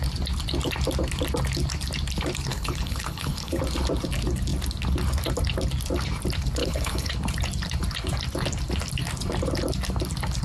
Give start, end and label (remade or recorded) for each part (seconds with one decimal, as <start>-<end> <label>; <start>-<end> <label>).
0.0-2.5 recorded; 2.5-3.6 remade; 3.6-6.6 recorded; 6.6-7.1 remade; 7.1-10.4 recorded